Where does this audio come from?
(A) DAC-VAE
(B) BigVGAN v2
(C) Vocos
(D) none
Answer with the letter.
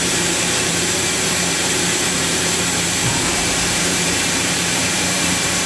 B